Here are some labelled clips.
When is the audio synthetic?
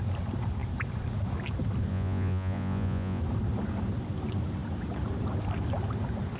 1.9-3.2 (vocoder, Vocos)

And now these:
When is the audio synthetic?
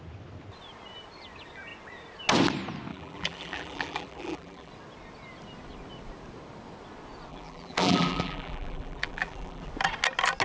2.9-4.7 (vocoder, BigVGAN v2); 7.3-9.7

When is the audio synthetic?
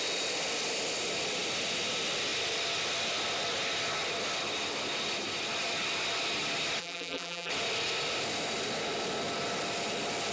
6.8-7.5 (vocoder, BigVGAN v2)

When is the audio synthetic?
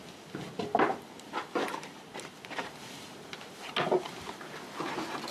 none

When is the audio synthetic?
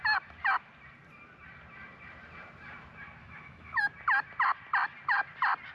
3.2-3.8 (autoencoder, DAC-VAE)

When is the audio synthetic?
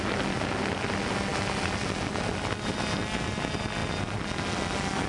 none